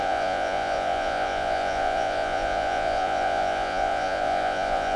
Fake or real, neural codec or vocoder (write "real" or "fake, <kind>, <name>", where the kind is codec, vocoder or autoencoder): fake, vocoder, Vocos